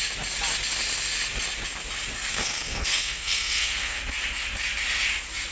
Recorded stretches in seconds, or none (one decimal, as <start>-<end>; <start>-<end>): 0.0-2.3; 4.0-5.5